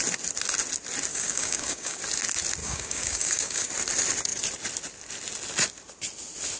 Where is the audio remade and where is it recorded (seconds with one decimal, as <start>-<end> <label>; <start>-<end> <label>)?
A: 0.0-1.1 recorded; 1.1-2.0 remade; 2.0-2.6 recorded; 2.6-3.7 remade; 3.7-6.6 recorded